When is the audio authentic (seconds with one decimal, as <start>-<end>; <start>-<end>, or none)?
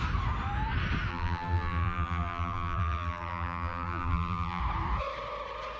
0.0-1.1; 4.6-5.8